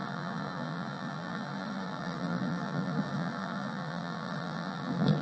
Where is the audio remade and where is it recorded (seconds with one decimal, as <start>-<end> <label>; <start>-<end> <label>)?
0.0-5.2 remade